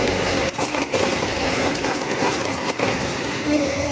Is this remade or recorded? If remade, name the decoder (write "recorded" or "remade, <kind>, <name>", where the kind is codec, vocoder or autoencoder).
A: remade, codec, SNAC